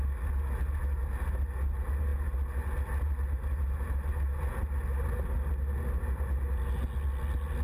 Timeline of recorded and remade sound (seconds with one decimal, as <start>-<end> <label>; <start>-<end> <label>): 0.0-7.6 recorded